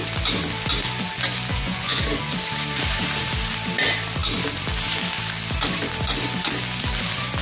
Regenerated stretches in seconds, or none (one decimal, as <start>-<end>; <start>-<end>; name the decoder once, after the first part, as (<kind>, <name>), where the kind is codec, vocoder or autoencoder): 1.5-2.0 (vocoder, Vocos)

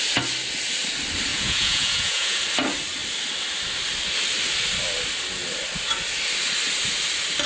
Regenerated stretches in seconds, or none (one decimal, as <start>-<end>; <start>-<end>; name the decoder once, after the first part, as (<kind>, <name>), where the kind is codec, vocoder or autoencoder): 1.3-2.4 (vocoder, Vocos)